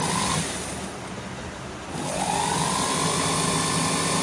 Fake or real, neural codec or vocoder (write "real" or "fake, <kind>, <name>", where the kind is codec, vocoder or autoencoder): real